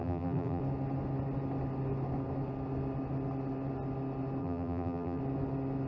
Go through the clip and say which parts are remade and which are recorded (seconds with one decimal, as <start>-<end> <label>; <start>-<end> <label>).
0.0-0.6 remade; 0.6-4.4 recorded; 4.4-5.2 remade; 5.2-5.9 recorded